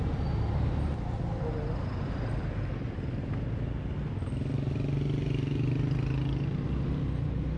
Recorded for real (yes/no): yes